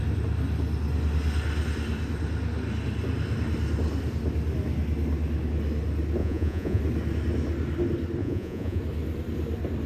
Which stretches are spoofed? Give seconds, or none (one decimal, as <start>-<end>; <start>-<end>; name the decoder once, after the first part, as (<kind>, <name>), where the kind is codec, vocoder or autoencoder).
6.2-6.8 (vocoder, Vocos); 8.2-8.8